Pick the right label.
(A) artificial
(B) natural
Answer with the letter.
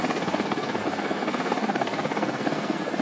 A